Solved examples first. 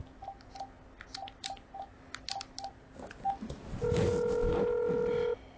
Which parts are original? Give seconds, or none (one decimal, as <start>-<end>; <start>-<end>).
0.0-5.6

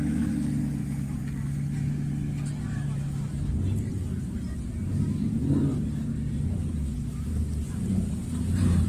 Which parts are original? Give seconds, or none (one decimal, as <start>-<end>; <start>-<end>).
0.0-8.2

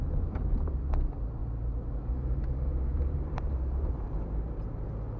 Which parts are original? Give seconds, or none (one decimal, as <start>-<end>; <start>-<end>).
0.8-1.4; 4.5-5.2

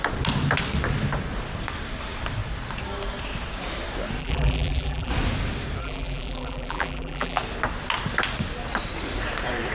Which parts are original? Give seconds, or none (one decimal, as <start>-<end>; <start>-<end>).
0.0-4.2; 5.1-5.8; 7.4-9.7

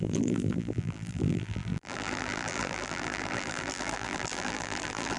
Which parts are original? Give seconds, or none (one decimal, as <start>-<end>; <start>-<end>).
none

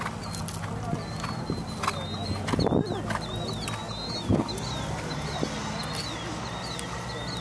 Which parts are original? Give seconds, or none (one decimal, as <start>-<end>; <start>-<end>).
0.0-7.4

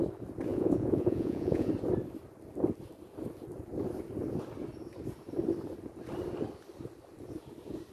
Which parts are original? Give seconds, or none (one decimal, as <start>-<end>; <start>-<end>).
0.0-0.5; 1.7-7.9